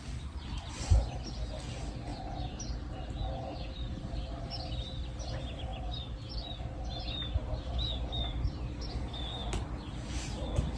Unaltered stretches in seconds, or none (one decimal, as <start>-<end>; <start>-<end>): 0.0-10.8